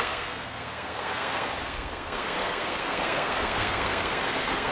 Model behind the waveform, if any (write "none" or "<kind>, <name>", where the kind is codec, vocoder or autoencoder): codec, SNAC